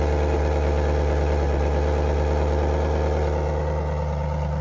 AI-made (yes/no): no